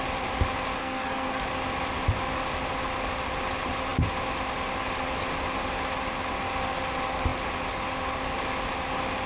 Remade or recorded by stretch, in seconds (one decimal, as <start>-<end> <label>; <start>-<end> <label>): 0.0-0.8 recorded; 0.8-1.4 remade; 1.4-9.3 recorded